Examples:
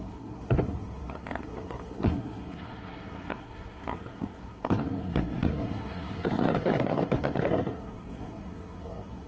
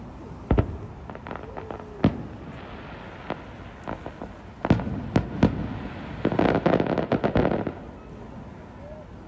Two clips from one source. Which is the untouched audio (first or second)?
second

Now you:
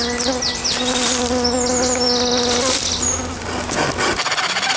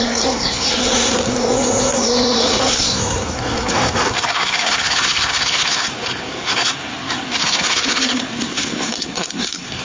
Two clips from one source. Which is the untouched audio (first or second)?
first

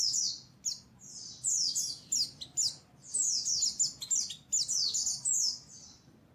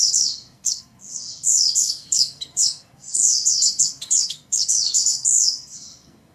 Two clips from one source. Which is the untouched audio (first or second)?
first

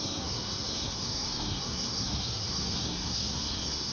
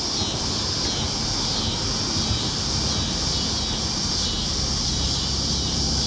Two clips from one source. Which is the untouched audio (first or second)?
second